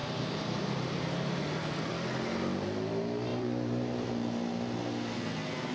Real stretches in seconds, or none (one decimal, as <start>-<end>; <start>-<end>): 1.9-3.3; 4.1-5.7